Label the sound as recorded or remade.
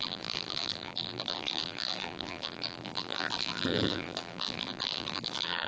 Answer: remade